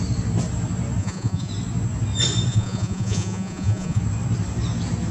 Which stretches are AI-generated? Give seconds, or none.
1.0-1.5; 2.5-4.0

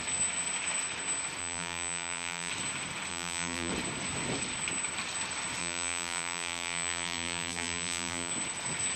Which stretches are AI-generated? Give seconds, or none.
1.4-2.5; 3.1-3.7; 5.6-8.3

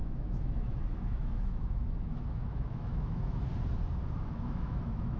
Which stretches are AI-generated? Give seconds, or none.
0.0-3.5; 4.2-5.2

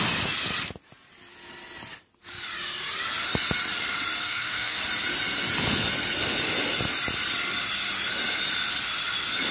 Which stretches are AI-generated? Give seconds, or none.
4.2-4.8

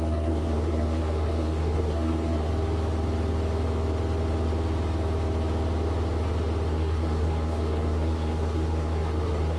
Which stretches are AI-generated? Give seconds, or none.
0.0-2.5; 6.7-9.6

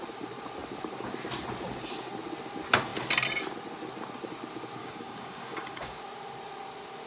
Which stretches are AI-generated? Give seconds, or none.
4.8-6.0

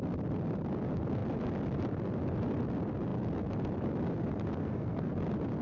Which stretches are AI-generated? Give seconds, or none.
4.6-5.1